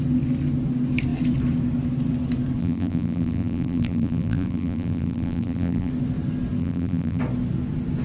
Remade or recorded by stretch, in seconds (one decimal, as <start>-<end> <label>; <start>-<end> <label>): 0.0-2.6 recorded; 2.6-5.9 remade; 5.9-6.6 recorded; 6.6-7.2 remade; 7.2-8.0 recorded